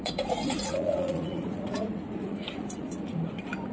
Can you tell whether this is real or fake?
fake